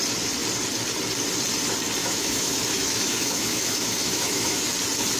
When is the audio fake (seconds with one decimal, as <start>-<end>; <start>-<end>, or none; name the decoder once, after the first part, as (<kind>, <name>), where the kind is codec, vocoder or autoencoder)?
2.0-4.6 (autoencoder, DAC-VAE)